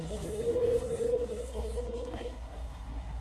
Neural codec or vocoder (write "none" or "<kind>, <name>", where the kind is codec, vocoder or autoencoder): codec, SNAC